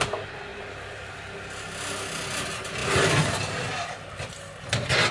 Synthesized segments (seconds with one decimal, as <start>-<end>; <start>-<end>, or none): none